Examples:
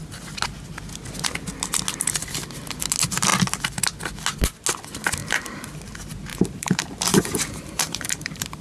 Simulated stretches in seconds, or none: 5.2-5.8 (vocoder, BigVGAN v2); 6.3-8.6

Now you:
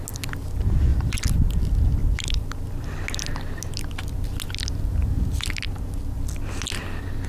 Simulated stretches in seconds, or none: 0.9-1.5 (vocoder, BigVGAN v2); 5.0-5.5

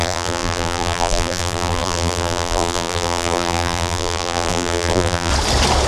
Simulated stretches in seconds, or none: 0.0-5.3 (vocoder, BigVGAN v2)

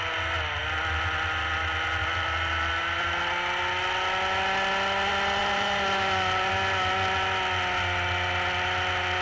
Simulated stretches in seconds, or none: 2.0-2.7 (vocoder, BigVGAN v2); 5.4-6.5